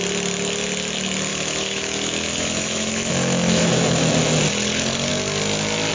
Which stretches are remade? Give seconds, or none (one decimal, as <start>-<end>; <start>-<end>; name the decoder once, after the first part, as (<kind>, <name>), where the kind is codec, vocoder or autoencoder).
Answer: 1.3-4.1 (autoencoder, DAC-VAE)

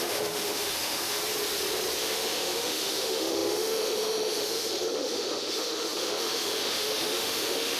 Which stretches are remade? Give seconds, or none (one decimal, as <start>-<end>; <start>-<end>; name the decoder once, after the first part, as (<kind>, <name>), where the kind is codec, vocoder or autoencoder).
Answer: 0.0-1.2 (autoencoder, DAC-VAE); 2.0-7.8

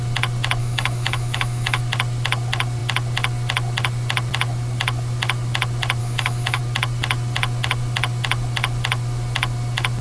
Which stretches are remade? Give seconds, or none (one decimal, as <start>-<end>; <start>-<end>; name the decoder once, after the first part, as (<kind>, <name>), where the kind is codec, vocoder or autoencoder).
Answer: 0.6-1.8 (autoencoder, DAC-VAE); 6.0-6.6

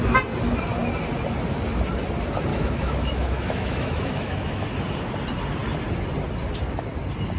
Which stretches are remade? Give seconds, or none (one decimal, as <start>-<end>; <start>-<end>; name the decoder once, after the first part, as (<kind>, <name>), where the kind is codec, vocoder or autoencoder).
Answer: 2.5-4.7 (autoencoder, DAC-VAE)

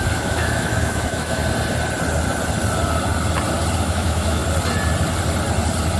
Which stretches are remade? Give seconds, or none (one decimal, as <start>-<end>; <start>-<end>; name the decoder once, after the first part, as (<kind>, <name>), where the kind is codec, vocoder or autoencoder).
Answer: 0.0-1.4 (autoencoder, DAC-VAE); 3.8-4.4

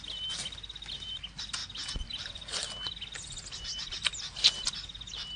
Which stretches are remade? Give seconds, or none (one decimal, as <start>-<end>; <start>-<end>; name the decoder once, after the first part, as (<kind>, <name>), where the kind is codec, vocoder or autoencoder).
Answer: none